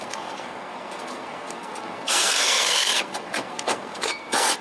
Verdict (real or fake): fake